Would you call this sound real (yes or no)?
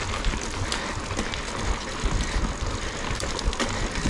yes